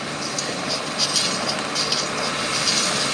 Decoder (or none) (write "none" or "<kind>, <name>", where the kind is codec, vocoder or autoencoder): none